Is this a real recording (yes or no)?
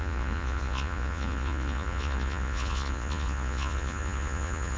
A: no